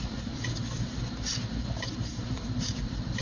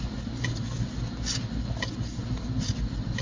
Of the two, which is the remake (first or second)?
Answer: first